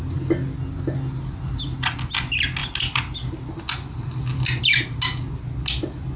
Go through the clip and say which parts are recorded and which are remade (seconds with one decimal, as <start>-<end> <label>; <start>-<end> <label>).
0.0-6.2 recorded